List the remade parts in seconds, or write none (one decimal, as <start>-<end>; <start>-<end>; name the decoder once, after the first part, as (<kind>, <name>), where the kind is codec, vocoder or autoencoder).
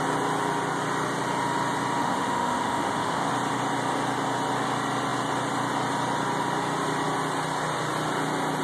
2.0-3.3 (autoencoder, DAC-VAE)